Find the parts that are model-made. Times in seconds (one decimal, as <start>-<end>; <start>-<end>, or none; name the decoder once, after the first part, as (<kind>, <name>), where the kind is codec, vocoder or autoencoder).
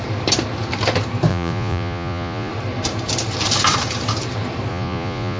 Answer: 1.3-2.5 (vocoder, Vocos); 4.7-5.4